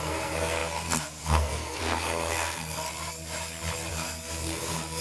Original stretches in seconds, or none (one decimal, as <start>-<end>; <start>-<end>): 2.9-3.9